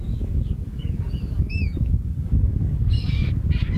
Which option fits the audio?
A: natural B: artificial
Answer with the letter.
B